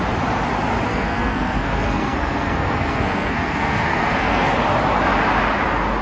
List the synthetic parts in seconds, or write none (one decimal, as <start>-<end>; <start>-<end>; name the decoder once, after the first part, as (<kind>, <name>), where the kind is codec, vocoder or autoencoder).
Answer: 0.9-4.5 (codec, SNAC)